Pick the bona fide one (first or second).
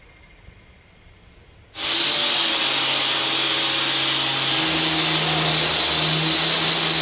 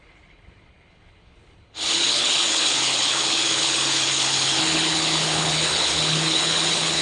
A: first